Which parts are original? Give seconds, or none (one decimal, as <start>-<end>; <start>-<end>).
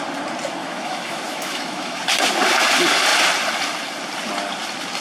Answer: 0.0-0.6; 2.0-5.0